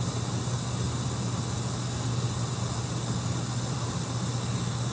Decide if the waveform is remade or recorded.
recorded